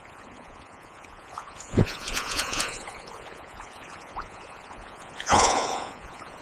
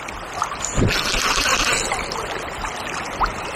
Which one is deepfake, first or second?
first